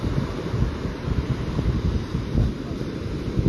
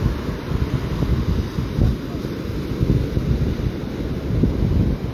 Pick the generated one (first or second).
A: first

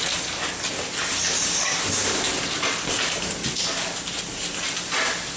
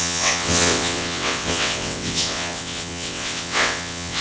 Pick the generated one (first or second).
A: second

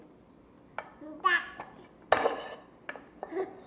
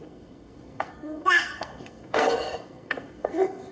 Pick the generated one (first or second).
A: second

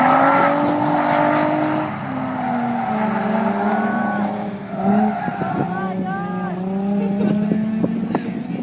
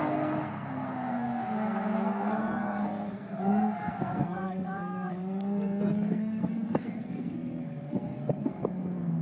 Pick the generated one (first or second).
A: second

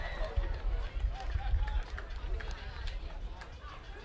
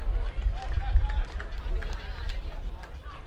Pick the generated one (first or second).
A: first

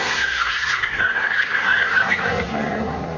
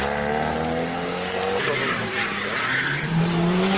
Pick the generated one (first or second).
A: first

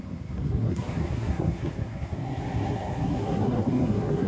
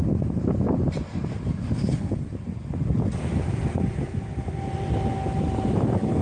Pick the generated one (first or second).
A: first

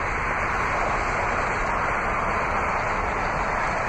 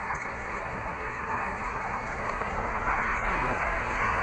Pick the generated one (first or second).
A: second